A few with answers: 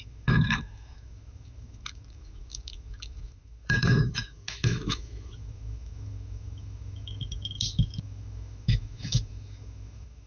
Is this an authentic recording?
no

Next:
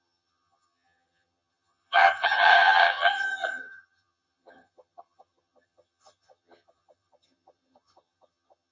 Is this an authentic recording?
no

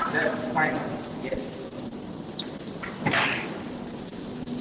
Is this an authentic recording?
no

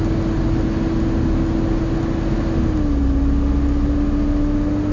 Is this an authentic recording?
yes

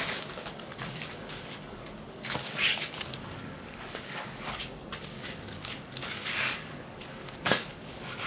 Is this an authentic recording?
no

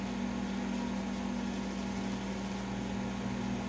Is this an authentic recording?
yes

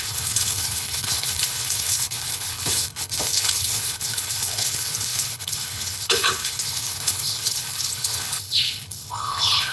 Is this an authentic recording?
no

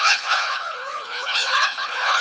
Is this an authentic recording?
no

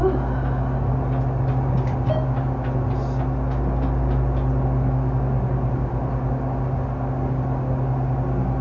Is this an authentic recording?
yes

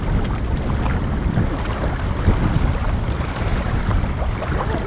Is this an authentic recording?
yes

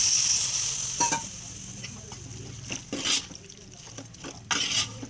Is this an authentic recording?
yes